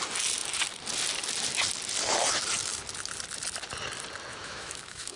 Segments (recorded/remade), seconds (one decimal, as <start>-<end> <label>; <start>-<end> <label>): 0.0-4.3 recorded; 4.3-5.2 remade